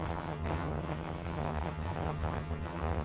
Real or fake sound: fake